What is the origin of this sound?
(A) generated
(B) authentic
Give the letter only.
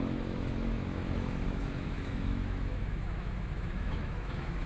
A